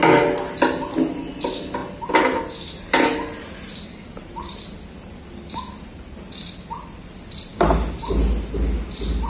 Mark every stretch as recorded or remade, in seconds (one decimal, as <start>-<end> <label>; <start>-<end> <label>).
0.0-9.3 recorded